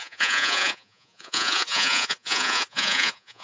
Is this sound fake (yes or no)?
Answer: yes